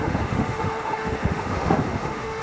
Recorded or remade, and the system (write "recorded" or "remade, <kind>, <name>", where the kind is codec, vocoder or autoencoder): remade, autoencoder, DAC-VAE